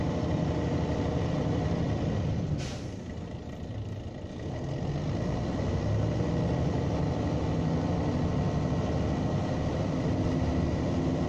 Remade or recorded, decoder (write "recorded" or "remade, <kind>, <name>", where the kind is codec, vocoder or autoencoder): recorded